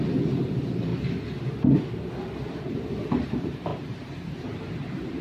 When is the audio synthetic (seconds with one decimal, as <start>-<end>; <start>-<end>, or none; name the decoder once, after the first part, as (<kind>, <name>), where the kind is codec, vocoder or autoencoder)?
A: 0.0-0.9 (vocoder, BigVGAN v2); 2.7-5.2